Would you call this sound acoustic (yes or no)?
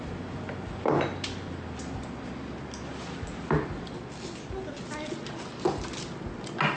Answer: yes